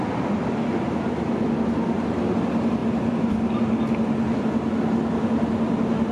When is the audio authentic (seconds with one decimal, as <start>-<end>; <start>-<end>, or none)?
0.0-6.1